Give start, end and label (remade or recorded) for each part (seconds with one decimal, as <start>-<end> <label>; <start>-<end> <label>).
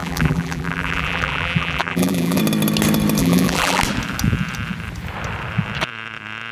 0.0-2.4 remade; 2.4-3.2 recorded; 3.2-3.8 remade; 3.8-6.5 recorded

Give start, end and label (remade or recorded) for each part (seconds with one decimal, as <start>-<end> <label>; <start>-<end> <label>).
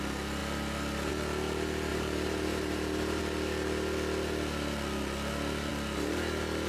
0.0-1.9 recorded; 1.9-3.2 remade; 3.2-6.7 recorded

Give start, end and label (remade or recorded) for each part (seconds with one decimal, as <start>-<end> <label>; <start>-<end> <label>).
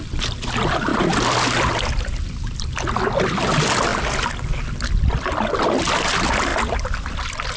0.0-0.9 recorded; 0.9-2.7 remade; 2.7-6.5 recorded; 6.5-7.6 remade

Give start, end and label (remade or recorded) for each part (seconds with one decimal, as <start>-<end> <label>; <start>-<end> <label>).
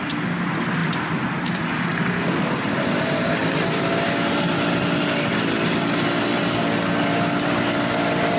0.0-8.4 recorded